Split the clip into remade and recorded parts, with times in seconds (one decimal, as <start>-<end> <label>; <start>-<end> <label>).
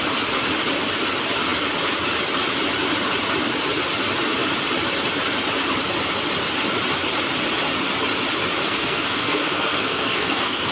0.0-8.6 recorded; 8.6-10.7 remade